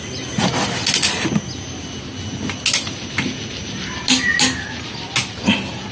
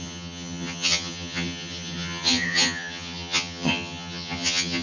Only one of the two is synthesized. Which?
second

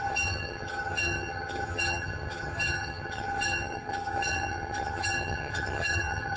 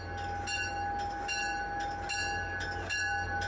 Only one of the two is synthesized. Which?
first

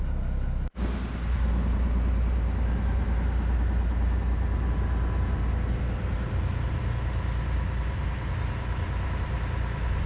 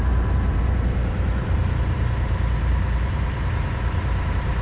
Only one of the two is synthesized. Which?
second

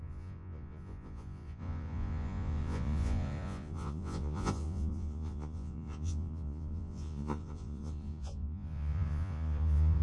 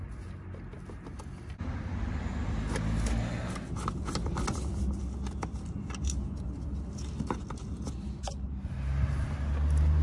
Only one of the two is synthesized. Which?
first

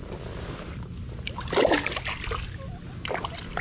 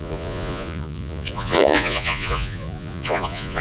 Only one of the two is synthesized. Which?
second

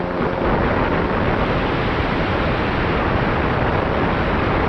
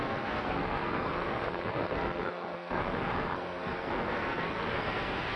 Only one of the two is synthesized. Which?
second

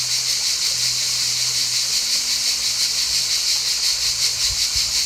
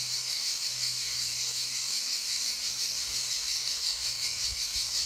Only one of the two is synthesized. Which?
second